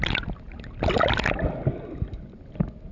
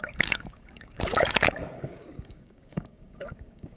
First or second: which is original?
first